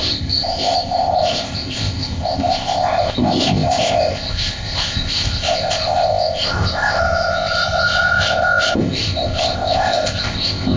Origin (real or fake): fake